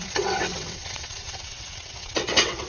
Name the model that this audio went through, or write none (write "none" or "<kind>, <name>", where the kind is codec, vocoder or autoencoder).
vocoder, WaveNeXt